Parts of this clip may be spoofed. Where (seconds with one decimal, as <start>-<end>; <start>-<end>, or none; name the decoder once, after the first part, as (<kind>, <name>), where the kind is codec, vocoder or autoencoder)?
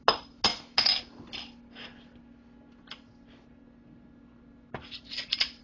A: none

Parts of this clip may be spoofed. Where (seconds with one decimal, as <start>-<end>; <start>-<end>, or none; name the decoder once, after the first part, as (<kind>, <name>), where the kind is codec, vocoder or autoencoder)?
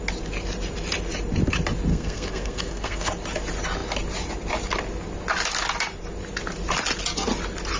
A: 1.9-3.1 (codec, SNAC)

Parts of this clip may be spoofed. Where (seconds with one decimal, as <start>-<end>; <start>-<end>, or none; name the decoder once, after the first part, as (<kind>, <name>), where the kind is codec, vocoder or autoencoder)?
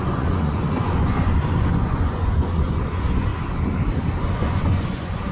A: 0.0-3.3 (vocoder, Vocos); 4.2-5.3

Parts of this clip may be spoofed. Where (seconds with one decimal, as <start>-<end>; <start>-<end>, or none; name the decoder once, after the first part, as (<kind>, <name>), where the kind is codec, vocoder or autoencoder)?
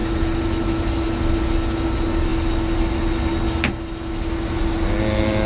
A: none